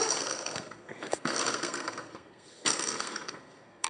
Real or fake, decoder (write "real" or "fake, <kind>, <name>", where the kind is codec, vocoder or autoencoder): fake, codec, SNAC